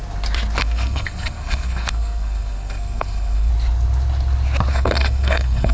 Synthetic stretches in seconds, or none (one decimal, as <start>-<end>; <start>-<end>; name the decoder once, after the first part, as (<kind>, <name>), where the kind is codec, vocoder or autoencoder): 0.6-3.5 (codec, SNAC); 4.7-5.7